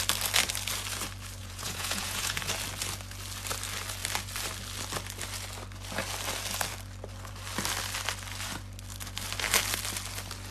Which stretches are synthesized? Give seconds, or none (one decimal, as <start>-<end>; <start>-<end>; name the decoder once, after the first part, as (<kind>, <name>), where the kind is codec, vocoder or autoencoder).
1.4-2.5 (vocoder, Vocos)